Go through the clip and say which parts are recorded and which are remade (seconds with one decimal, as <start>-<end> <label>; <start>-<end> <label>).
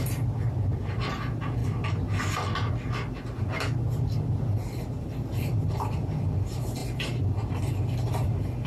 0.0-1.6 remade; 1.6-5.0 recorded; 5.0-8.7 remade